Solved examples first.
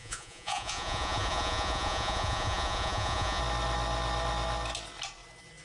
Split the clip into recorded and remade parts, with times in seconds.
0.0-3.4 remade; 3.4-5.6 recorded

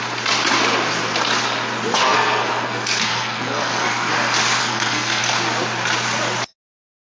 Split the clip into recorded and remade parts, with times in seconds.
0.0-2.0 recorded; 2.0-4.1 remade; 4.1-4.6 recorded; 4.6-5.2 remade; 5.2-7.1 recorded

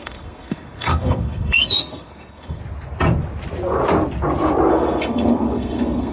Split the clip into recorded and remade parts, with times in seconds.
0.0-2.6 remade; 2.6-4.7 recorded; 4.7-6.1 remade

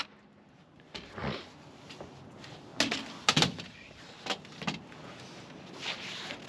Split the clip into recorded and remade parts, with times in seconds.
0.0-6.5 recorded

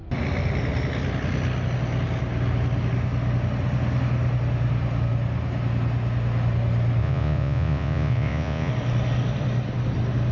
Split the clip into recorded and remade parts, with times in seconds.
0.0-7.0 recorded; 7.0-8.7 remade; 8.7-10.3 recorded

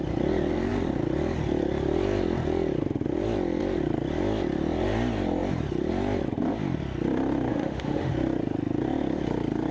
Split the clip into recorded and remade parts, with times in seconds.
0.0-7.5 recorded; 7.5-8.1 remade; 8.1-9.7 recorded